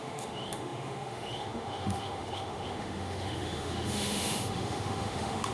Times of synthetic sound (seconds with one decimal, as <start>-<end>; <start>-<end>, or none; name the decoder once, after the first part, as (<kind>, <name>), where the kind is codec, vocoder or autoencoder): 0.0-5.5 (autoencoder, DAC-VAE)